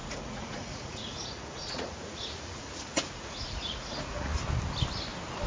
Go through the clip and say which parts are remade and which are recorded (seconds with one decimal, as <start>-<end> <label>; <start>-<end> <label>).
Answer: 0.0-4.3 remade; 4.3-5.5 recorded